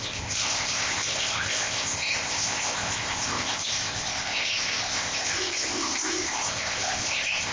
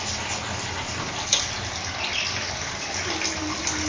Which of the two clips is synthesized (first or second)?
first